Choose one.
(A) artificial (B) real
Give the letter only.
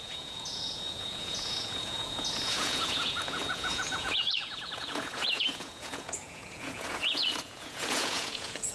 A